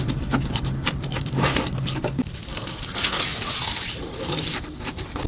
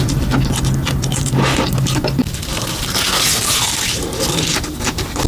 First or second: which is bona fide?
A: second